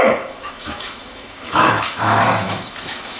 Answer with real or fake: fake